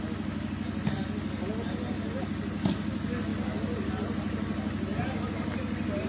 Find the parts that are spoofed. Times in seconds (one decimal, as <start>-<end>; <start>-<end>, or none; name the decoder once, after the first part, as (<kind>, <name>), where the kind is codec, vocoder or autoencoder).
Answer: none